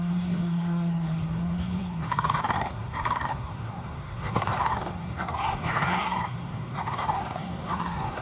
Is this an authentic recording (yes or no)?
no